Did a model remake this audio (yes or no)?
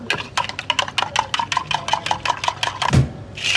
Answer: no